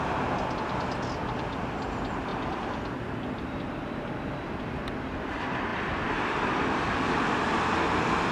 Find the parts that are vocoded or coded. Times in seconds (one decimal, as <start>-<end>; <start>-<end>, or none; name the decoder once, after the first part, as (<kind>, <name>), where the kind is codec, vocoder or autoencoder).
2.3-4.5 (vocoder, BigVGAN v2); 5.7-7.6